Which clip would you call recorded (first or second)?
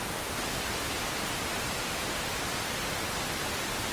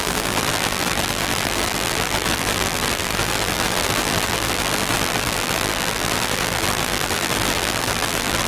first